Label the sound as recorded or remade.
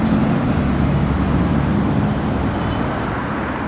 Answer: recorded